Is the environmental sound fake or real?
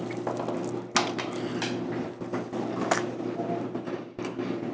real